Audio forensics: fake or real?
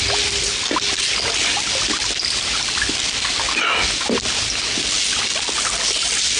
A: real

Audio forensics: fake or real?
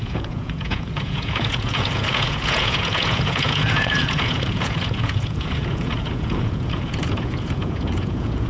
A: fake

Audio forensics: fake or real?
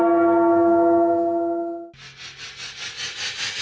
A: real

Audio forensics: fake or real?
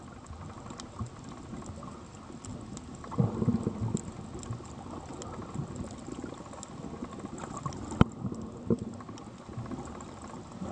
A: real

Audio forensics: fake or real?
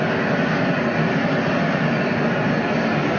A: real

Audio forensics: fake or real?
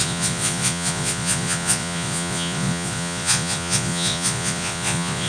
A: fake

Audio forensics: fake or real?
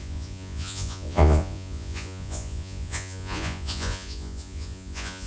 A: fake